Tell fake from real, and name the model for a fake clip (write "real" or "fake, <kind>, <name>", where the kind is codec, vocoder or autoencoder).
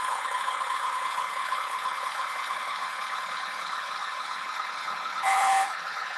fake, codec, HILCodec